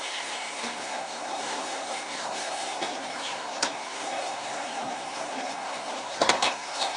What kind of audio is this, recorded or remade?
remade